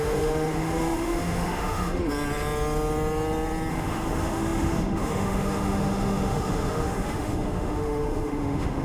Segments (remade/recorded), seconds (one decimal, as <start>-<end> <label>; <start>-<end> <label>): 0.0-2.0 remade; 2.0-3.7 recorded; 3.7-8.8 remade